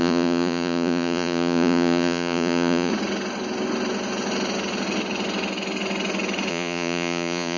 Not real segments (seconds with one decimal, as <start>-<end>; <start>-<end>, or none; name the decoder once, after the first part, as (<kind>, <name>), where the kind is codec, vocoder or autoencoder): 0.0-2.9 (vocoder, Vocos); 6.5-7.6